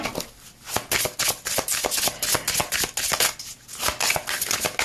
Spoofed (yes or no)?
no